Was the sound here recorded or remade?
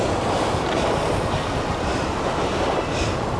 recorded